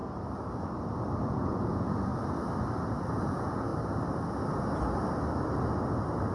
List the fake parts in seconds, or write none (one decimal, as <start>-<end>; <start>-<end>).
1.3-2.1; 3.2-3.7